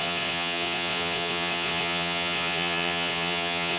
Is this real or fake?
fake